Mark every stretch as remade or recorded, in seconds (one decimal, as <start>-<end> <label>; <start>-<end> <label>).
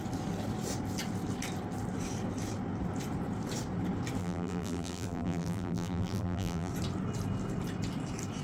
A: 0.0-4.2 recorded; 4.2-6.7 remade; 6.7-8.4 recorded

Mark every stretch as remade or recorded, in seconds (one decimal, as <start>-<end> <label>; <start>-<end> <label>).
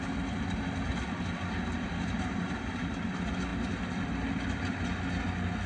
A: 0.0-1.7 recorded; 1.7-3.0 remade; 3.0-5.7 recorded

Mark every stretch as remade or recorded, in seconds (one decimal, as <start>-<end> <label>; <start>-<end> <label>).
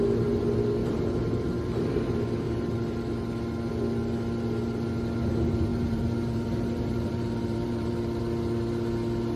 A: 0.0-0.8 recorded; 0.8-1.8 remade; 1.8-5.7 recorded; 5.7-8.2 remade; 8.2-9.4 recorded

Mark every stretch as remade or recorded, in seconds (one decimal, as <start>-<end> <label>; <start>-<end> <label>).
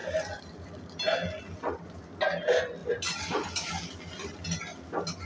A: 0.0-0.8 remade; 0.8-2.8 recorded; 2.8-3.7 remade; 3.7-5.2 recorded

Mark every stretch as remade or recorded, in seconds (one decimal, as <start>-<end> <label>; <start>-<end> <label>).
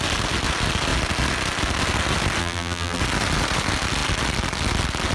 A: 0.0-2.4 recorded; 2.4-3.0 remade; 3.0-5.1 recorded